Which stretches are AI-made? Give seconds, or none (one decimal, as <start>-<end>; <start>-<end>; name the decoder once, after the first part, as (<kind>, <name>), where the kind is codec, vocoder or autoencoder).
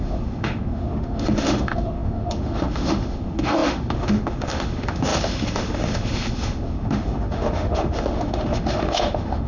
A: 0.0-9.5 (autoencoder, DAC-VAE)